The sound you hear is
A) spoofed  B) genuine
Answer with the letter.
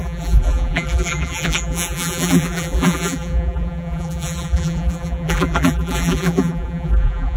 A